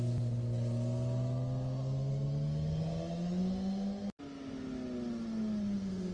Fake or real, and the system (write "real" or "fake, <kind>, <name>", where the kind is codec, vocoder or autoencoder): real